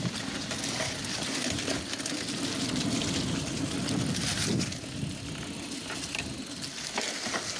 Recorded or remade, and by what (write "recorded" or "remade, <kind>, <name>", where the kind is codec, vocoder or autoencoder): recorded